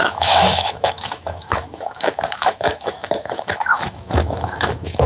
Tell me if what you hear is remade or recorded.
remade